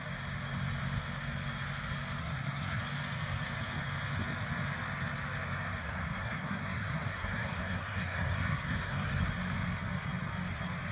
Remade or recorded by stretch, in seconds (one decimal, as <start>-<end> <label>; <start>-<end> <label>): 0.0-2.2 recorded; 2.2-2.8 remade; 2.8-5.8 recorded; 5.8-9.2 remade; 9.2-10.9 recorded